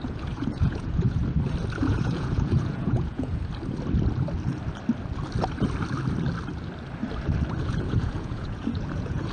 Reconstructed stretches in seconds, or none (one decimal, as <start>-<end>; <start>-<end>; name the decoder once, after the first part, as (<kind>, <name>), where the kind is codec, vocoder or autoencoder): 0.0-1.2 (vocoder, Vocos); 1.8-3.3; 7.6-9.3